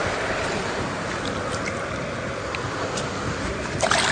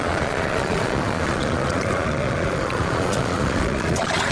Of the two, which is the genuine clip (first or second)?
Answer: first